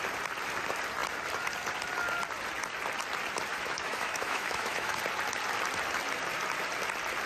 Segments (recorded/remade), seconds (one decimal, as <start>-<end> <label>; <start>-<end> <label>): 0.0-3.5 recorded; 3.5-5.0 remade; 5.0-7.3 recorded